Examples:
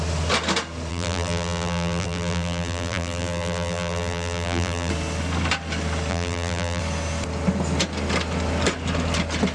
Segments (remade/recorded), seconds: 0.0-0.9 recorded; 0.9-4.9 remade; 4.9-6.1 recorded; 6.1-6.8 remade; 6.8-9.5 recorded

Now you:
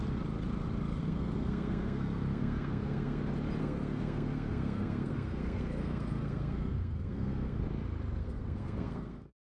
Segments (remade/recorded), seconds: 0.0-0.9 recorded; 0.9-3.2 remade; 3.2-3.6 recorded; 3.6-7.6 remade; 7.6-8.2 recorded; 8.2-9.4 remade

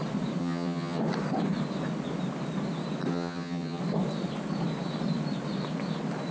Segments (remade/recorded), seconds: 0.0-0.4 recorded; 0.4-1.0 remade; 1.0-3.1 recorded; 3.1-3.8 remade; 3.8-6.3 recorded

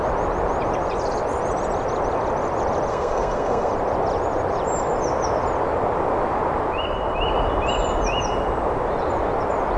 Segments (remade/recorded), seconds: 0.0-2.9 recorded; 2.9-3.7 remade; 3.7-9.8 recorded

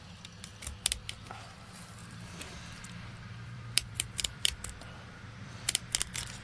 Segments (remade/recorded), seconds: 0.0-2.0 recorded; 2.0-5.8 remade; 5.8-6.4 recorded

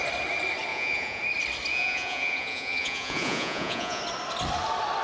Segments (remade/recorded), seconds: 0.0-0.7 recorded; 0.7-1.2 remade; 1.2-1.7 recorded; 1.7-4.0 remade; 4.0-5.0 recorded